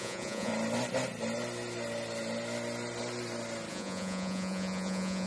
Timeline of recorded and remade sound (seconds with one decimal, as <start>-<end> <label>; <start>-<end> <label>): 0.0-0.5 remade; 0.5-3.7 recorded; 3.7-5.3 remade